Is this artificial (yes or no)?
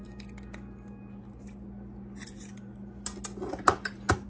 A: no